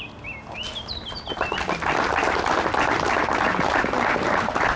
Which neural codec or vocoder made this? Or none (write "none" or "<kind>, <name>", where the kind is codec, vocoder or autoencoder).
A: none